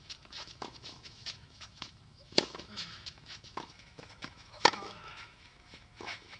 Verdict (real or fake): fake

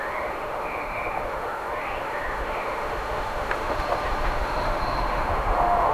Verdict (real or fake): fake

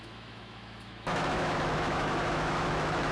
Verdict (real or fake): fake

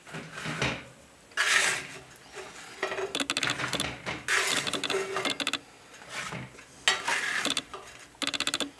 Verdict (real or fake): real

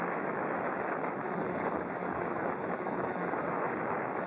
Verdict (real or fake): fake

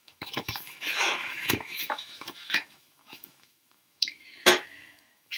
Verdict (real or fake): fake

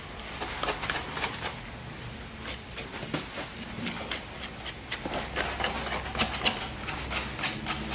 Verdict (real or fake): real